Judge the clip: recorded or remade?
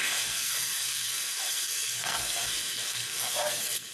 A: remade